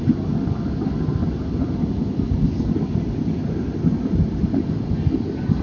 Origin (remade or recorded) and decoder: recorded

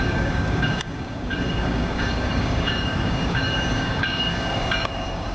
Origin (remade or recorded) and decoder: remade, codec, DAC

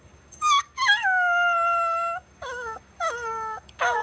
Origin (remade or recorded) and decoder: remade, codec, DAC